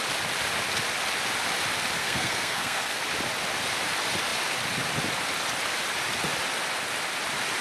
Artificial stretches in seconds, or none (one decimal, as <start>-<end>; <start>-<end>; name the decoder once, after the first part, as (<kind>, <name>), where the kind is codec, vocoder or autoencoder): 2.0-3.0 (codec, SNAC)